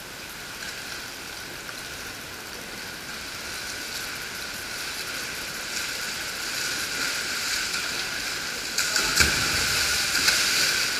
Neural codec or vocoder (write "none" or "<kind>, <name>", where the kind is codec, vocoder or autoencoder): none